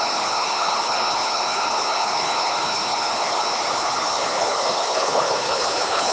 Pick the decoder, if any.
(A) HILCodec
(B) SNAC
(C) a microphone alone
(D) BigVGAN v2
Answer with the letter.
A